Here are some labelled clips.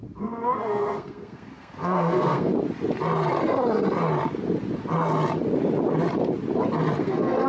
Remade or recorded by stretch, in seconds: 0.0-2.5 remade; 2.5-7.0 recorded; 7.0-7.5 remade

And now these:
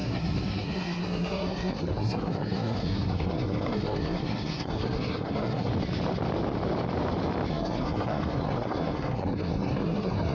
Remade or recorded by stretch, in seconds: 0.0-5.7 remade; 5.7-7.5 recorded; 7.5-10.3 remade

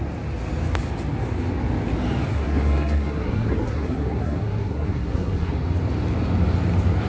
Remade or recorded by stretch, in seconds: 0.0-2.3 recorded; 2.3-5.5 remade; 5.5-7.1 recorded

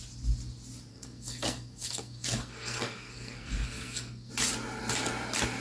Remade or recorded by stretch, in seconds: 0.0-0.9 recorded; 0.9-4.3 remade; 4.3-5.6 recorded

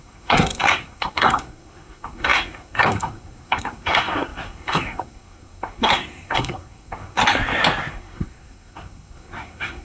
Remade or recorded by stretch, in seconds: 0.0-7.2 remade; 7.2-7.9 recorded; 7.9-9.8 remade